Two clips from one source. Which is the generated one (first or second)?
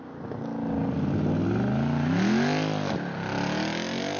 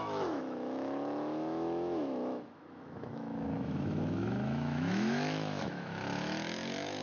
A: second